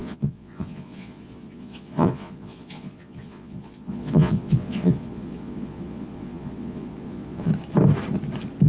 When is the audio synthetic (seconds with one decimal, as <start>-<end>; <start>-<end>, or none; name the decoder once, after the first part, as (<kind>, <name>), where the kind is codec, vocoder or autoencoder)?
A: 0.0-7.5 (vocoder, Vocos)